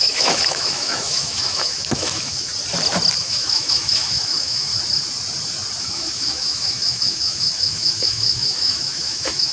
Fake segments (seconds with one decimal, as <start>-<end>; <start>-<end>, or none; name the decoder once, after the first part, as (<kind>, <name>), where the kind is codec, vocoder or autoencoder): 0.0-2.5 (autoencoder, DAC-VAE); 3.2-4.7; 5.8-9.5